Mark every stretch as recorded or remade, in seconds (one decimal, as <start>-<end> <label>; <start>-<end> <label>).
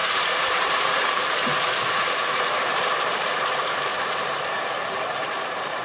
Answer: 0.0-5.8 remade